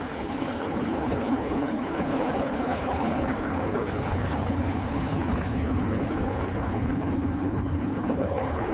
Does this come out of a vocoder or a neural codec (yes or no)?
yes